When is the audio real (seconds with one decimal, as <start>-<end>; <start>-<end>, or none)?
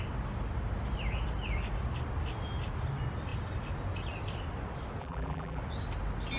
0.0-5.0; 5.6-6.4